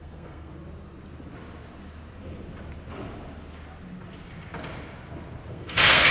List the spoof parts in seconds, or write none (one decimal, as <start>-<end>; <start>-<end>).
0.0-0.5; 5.5-6.1